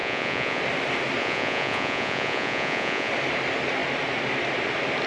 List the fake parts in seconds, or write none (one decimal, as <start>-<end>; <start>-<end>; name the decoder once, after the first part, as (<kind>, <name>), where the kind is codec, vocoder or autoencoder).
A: 0.0-0.6 (vocoder, Vocos); 1.2-3.1